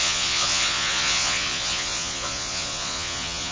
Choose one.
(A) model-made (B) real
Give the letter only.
A